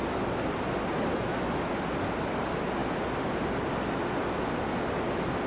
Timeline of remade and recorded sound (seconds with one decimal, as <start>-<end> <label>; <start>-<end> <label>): 0.0-1.1 recorded; 1.1-1.6 remade; 1.6-5.5 recorded